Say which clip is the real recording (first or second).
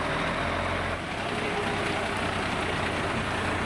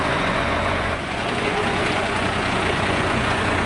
first